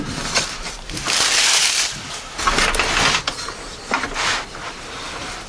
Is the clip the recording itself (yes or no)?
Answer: yes